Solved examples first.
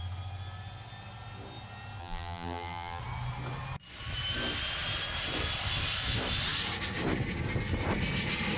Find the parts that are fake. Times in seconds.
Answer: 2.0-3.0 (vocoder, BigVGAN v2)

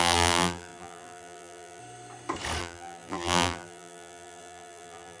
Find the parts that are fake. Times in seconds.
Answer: 0.0-1.8 (vocoder, BigVGAN v2); 2.6-5.2

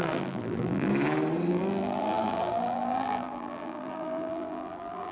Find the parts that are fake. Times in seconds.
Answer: 0.0-0.9 (vocoder, BigVGAN v2); 1.5-5.1

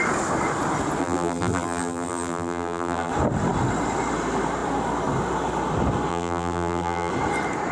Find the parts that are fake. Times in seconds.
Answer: 1.0-3.1 (vocoder, BigVGAN v2); 6.1-7.1

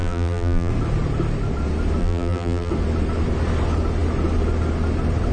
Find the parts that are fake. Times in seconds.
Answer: 0.0-0.7 (vocoder, BigVGAN v2); 2.0-2.7

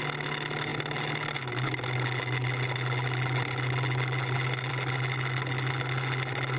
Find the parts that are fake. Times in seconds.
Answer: none

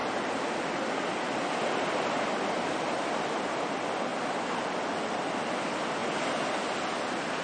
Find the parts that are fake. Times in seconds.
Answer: 0.0-3.0 (vocoder, BigVGAN v2)